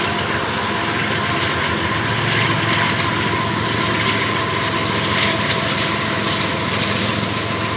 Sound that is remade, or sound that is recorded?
recorded